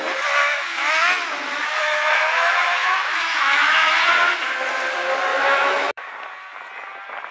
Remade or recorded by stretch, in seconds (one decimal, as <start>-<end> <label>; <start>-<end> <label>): 0.0-0.4 recorded; 0.4-3.9 remade; 3.9-5.3 recorded; 5.3-6.1 remade; 6.1-7.3 recorded